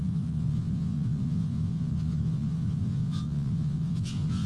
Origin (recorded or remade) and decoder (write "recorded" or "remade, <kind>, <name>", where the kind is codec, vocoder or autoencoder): remade, vocoder, Vocos